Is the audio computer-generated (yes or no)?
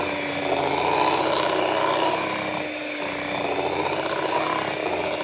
no